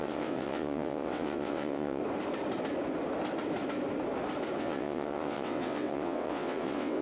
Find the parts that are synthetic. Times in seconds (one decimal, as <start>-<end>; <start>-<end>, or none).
0.0-2.0; 4.6-7.0